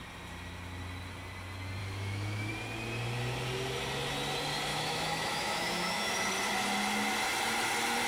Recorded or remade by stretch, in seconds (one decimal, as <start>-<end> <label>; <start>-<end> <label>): 0.0-1.8 recorded; 1.8-2.5 remade; 2.5-4.7 recorded; 4.7-6.1 remade; 6.1-8.1 recorded